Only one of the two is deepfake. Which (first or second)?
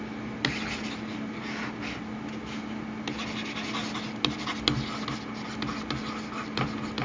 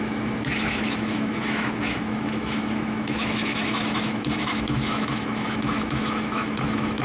second